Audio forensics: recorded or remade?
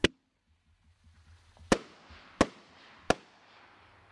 recorded